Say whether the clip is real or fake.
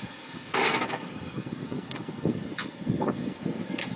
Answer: fake